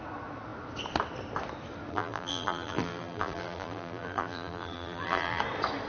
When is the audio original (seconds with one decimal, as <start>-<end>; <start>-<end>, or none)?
0.0-1.9; 5.4-5.9